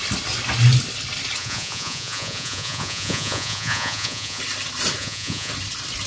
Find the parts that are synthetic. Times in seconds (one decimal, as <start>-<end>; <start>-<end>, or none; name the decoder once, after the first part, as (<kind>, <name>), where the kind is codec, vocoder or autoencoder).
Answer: 1.4-4.4 (vocoder, Vocos); 5.0-5.5